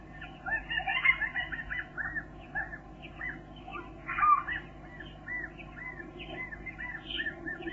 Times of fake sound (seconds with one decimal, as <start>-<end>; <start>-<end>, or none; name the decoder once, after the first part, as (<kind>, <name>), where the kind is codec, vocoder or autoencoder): none

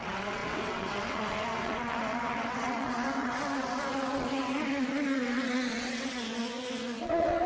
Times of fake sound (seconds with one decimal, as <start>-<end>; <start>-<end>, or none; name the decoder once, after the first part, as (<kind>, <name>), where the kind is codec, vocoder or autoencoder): 0.0-6.4 (vocoder, WaveNeXt); 7.0-7.5

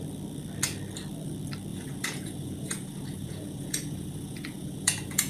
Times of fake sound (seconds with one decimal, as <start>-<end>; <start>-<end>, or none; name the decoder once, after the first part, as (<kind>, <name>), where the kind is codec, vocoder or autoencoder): 1.7-5.3 (vocoder, Vocos)

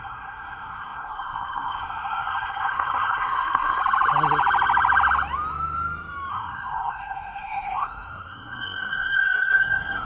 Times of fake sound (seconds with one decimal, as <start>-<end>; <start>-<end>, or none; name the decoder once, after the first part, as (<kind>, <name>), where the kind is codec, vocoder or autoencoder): 0.0-3.8 (codec, SNAC); 6.3-10.1

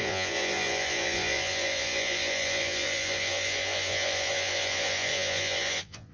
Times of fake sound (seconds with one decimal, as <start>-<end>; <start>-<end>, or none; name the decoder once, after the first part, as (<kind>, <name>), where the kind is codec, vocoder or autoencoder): 0.0-6.1 (vocoder, Vocos)

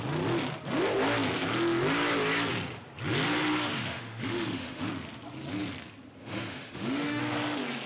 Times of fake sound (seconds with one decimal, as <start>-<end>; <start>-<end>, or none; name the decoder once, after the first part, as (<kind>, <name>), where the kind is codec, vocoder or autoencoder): 3.7-4.9 (autoencoder, DAC-VAE); 6.2-7.2

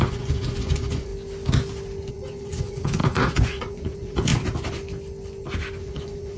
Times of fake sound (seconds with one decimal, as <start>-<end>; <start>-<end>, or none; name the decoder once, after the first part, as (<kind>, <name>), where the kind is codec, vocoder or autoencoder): 0.0-1.1 (vocoder, Vocos); 2.1-4.3; 5.8-6.4